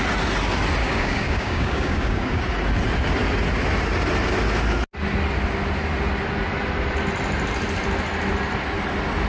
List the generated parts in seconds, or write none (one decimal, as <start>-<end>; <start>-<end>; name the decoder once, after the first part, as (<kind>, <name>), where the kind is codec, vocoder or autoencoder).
0.8-2.4 (codec, DAC)